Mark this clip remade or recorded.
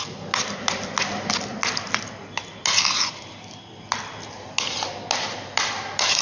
recorded